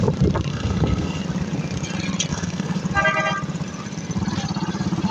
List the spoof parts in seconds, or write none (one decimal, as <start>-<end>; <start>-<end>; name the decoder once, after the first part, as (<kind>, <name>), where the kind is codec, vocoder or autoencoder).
0.5-1.2 (codec, SNAC); 2.3-2.8

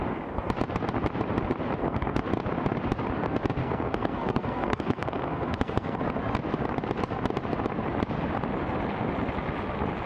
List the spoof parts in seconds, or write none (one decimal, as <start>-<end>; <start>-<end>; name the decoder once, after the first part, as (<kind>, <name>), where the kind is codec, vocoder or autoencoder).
1.8-2.3 (codec, SNAC); 3.6-6.0

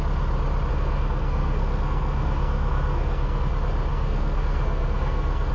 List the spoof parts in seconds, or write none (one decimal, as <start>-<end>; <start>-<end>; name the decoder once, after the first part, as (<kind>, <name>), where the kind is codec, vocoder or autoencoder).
0.7-3.5 (codec, SNAC); 3.9-5.5

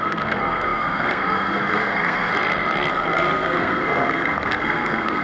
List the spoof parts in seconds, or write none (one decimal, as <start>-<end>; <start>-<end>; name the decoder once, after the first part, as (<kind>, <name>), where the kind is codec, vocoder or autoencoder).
0.0-2.3 (codec, SNAC); 2.9-5.2